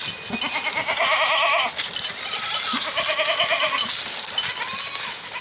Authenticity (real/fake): real